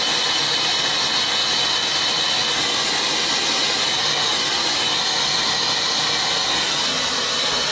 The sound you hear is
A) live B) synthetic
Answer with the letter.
A